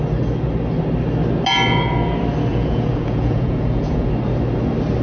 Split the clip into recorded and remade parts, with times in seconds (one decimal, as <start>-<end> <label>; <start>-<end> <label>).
0.0-2.5 recorded; 2.5-4.1 remade; 4.1-5.0 recorded